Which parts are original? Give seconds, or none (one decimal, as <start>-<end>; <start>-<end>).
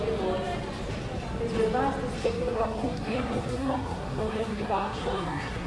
0.0-2.2